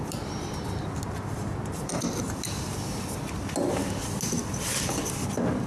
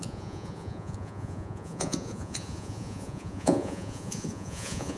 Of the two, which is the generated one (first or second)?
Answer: second